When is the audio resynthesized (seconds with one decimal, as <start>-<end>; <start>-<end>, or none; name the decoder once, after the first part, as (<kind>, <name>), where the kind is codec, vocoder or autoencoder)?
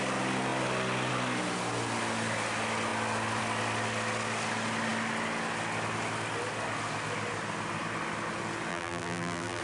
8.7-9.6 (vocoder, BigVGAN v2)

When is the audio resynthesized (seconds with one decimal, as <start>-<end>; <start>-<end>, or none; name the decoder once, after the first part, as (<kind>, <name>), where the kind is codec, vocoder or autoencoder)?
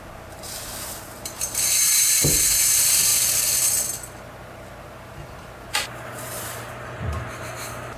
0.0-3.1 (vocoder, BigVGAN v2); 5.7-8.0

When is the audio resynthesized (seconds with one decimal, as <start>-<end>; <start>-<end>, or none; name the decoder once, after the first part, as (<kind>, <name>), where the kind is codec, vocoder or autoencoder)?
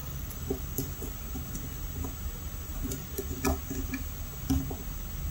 0.0-0.6 (vocoder, BigVGAN v2)